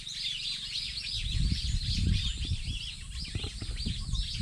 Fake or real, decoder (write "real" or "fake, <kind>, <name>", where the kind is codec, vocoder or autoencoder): real